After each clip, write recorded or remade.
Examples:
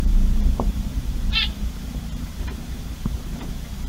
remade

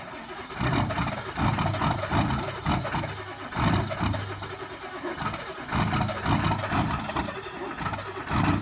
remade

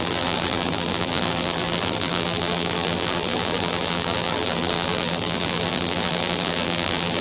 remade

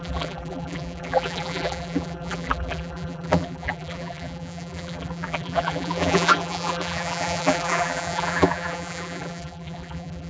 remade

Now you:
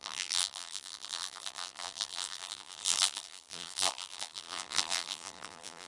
remade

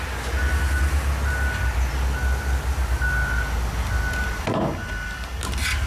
recorded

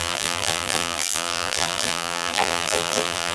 remade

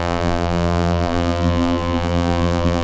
remade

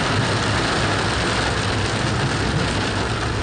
recorded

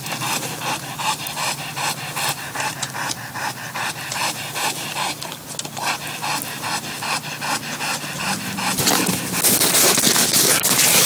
recorded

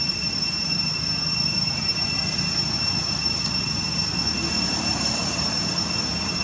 recorded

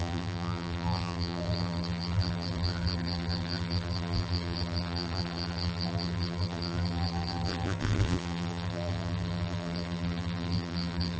remade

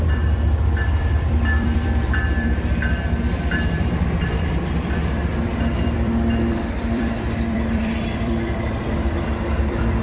remade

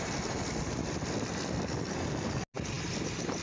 recorded